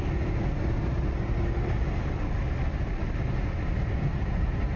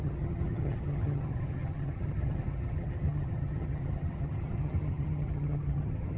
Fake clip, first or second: second